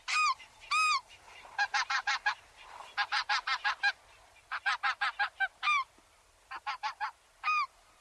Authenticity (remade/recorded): recorded